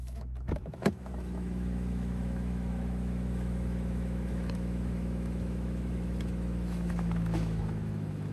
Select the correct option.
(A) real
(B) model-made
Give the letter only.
B